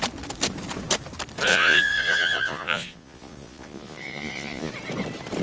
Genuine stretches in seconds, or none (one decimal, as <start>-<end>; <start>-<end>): 0.0-1.5; 4.7-5.4

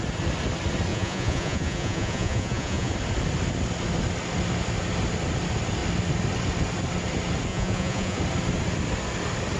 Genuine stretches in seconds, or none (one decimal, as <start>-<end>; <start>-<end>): 0.0-0.9; 2.9-7.5; 8.2-9.6